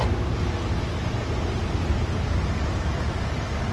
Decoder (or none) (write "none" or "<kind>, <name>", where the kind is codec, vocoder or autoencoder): none